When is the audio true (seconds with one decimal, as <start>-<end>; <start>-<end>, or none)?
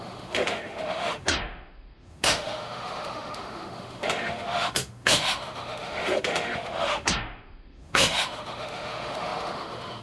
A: none